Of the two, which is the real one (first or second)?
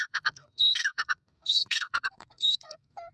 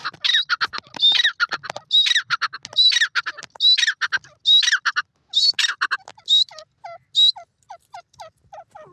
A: second